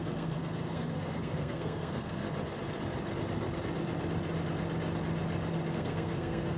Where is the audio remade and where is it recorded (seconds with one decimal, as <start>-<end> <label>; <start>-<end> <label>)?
0.0-2.2 remade; 2.2-5.7 recorded; 5.7-6.6 remade